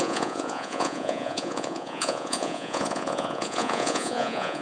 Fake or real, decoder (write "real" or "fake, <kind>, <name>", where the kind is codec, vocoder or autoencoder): fake, vocoder, Vocos